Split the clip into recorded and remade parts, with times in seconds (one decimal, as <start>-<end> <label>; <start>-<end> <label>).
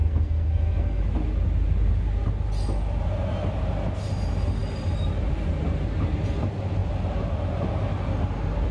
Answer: 0.0-1.0 remade; 1.0-8.7 recorded